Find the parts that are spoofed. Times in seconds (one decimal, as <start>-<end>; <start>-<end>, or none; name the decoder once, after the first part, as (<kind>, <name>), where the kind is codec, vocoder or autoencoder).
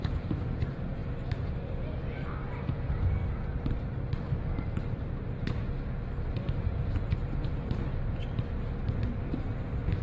0.0-1.0 (vocoder, Vocos); 2.5-3.2; 6.3-7.5